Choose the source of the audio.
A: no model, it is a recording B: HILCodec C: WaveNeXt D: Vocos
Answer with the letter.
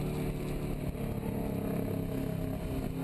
A